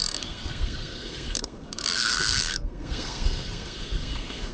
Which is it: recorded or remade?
remade